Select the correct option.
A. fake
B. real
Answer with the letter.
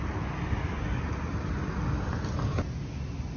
B